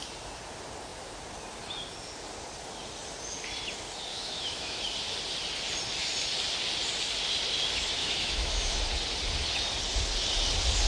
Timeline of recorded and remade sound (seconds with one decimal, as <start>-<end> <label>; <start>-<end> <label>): 0.0-4.1 recorded; 4.1-4.8 remade; 4.8-8.0 recorded; 8.0-8.8 remade; 8.8-10.9 recorded

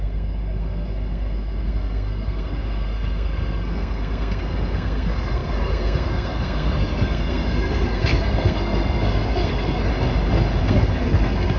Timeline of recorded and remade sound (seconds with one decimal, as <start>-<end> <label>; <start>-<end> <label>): 0.0-9.9 remade; 9.9-10.6 recorded; 10.6-11.6 remade

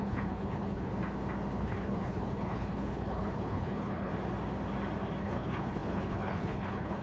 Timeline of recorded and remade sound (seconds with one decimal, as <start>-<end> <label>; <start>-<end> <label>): 0.0-0.9 remade; 0.9-1.6 recorded; 1.6-4.1 remade; 4.1-5.2 recorded; 5.2-7.0 remade

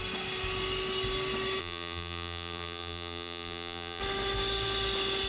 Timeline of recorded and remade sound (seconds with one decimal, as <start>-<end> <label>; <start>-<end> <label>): 0.0-1.6 recorded; 1.6-4.0 remade; 4.0-5.3 recorded